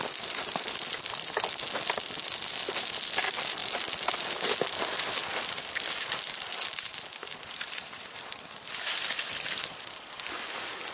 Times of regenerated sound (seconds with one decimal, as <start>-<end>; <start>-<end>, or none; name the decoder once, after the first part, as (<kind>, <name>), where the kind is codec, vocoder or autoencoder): 0.0-10.9 (vocoder, BigVGAN v2)